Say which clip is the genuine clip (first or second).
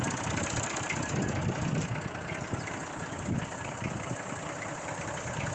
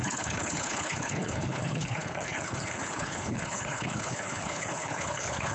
first